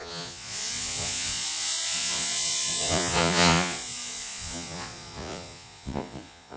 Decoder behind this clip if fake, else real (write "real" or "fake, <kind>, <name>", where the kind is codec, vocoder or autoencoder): fake, vocoder, Vocos